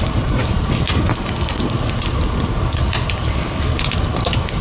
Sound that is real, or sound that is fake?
real